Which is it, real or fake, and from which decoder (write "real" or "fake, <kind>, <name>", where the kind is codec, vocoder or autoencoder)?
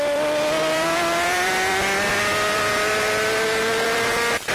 fake, vocoder, BigVGAN v2